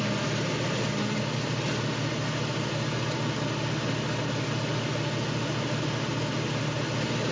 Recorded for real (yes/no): yes